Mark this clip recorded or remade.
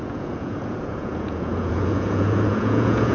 remade